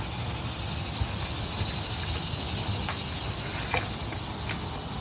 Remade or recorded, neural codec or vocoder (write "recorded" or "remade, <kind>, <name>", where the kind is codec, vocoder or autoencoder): recorded